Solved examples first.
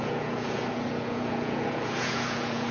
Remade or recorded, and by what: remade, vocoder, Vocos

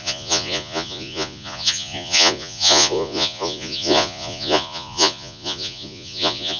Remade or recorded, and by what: remade, vocoder, Vocos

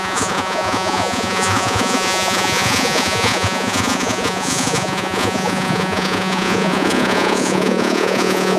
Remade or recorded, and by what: remade, vocoder, Vocos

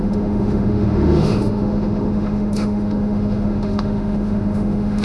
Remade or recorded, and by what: remade, autoencoder, DAC-VAE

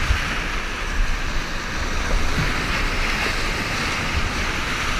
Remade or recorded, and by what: recorded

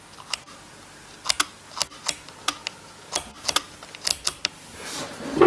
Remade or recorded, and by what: recorded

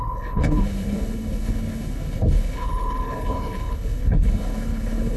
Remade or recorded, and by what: remade, codec, HILCodec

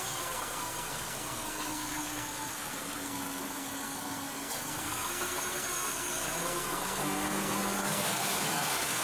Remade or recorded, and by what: remade, codec, SNAC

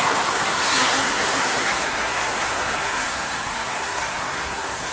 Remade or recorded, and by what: remade, codec, SNAC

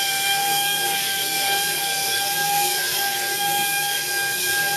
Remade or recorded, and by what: remade, codec, SNAC